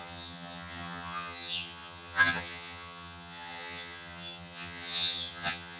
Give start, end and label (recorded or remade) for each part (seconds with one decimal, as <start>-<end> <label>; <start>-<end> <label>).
0.0-5.8 remade